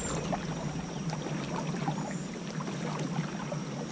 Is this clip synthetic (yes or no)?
no